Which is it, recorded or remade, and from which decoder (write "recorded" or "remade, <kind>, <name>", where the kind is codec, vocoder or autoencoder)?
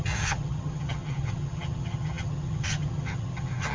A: remade, vocoder, HiFi-GAN